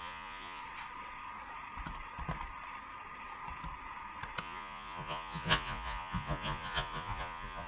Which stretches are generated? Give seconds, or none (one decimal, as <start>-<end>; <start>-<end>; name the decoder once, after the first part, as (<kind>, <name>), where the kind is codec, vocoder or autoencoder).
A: 0.0-0.6 (vocoder, Vocos); 4.4-7.7

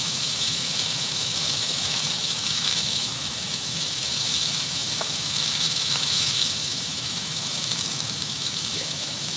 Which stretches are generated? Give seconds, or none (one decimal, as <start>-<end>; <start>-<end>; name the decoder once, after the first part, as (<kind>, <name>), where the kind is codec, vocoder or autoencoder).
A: 0.0-9.4 (autoencoder, DAC-VAE)